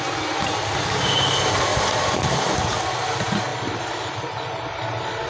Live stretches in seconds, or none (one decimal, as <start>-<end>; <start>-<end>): 0.0-1.7; 3.0-3.5; 4.4-5.3